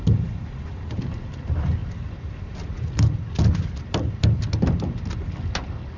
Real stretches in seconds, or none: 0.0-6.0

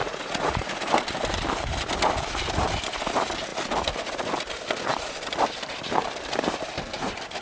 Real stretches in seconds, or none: 0.8-7.4

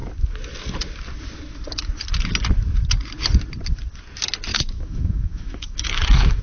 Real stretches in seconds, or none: 0.0-4.5

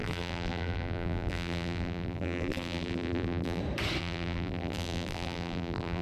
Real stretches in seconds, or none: 3.6-4.0

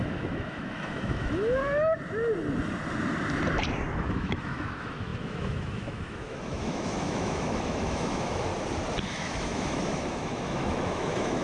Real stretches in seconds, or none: 1.6-3.9; 8.5-9.0

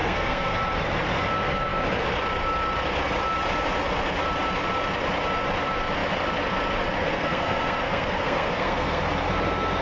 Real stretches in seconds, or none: 0.6-7.0; 9.0-9.8